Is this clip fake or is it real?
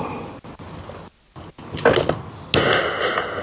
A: real